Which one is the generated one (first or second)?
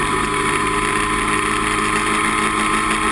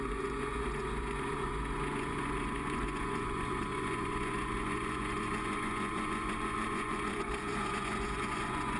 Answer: second